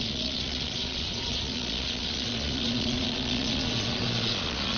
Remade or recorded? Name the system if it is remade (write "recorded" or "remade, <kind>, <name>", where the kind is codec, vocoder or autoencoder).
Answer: remade, vocoder, Vocos